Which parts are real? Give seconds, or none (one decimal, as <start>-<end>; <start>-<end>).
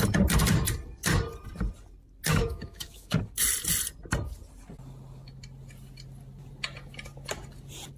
0.0-2.4; 3.2-8.0